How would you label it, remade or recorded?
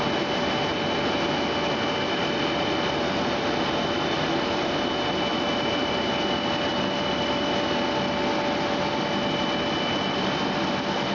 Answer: recorded